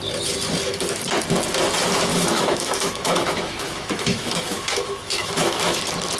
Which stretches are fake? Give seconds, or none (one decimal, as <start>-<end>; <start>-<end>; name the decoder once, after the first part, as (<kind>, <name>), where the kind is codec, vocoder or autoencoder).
2.1-5.8 (autoencoder, DAC-VAE)